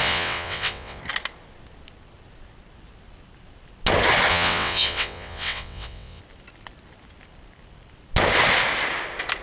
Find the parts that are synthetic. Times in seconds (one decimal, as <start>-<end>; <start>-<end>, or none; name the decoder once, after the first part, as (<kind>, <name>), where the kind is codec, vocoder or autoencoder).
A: 0.0-1.0 (vocoder, WaveNeXt); 4.3-6.2